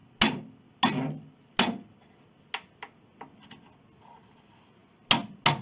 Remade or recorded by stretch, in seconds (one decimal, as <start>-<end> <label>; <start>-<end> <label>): 0.0-5.6 recorded